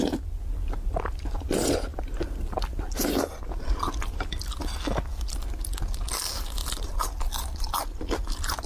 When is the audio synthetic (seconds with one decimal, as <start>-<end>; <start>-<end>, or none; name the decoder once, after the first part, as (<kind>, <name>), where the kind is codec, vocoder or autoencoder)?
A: none